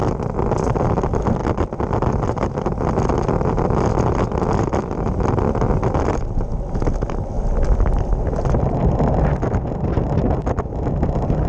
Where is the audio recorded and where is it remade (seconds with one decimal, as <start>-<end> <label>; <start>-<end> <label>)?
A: 0.0-11.5 recorded